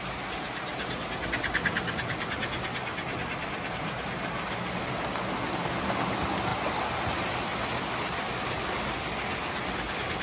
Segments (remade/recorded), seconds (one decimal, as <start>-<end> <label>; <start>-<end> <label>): 0.0-10.2 recorded